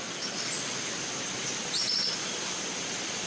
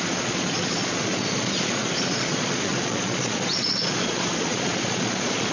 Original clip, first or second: first